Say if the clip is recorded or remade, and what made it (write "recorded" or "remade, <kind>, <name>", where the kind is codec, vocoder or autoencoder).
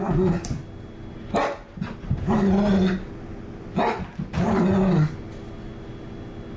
recorded